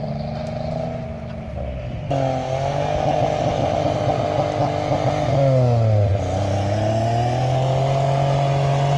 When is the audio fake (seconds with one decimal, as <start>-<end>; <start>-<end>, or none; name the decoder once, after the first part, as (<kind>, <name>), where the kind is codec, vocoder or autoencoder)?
none